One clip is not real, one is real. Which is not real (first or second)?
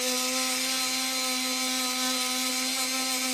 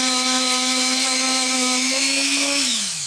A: second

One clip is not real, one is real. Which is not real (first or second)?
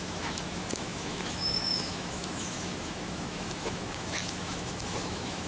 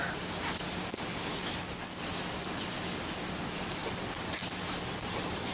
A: first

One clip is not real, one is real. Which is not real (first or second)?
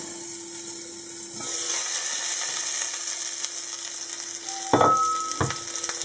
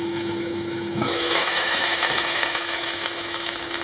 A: second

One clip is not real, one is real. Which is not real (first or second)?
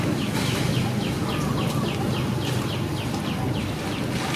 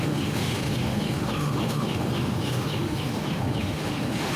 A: second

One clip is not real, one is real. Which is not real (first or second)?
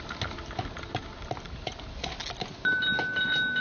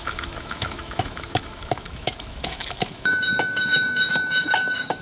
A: second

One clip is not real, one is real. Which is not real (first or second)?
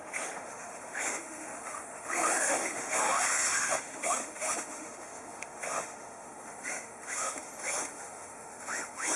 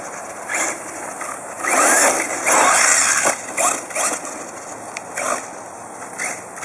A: first